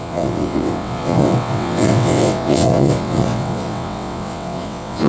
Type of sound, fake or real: fake